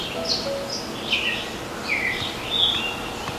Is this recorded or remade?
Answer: recorded